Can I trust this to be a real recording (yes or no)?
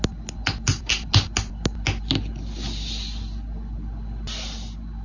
yes